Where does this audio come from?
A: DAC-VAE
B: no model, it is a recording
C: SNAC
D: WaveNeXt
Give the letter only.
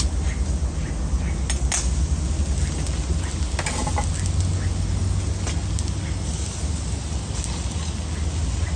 B